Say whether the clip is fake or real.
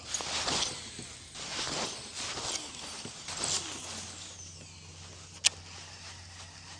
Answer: real